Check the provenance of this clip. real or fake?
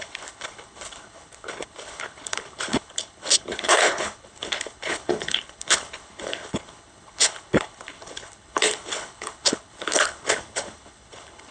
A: fake